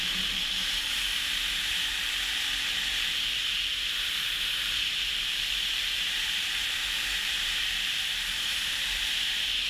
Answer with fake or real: fake